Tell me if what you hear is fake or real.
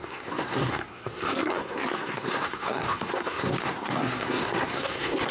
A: fake